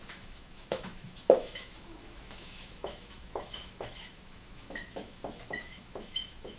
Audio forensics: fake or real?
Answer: fake